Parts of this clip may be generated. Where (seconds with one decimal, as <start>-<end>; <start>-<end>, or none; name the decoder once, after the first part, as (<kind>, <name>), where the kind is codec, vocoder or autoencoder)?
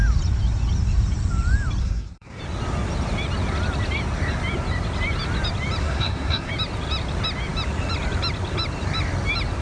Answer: 1.8-2.4 (codec, SNAC); 5.8-6.5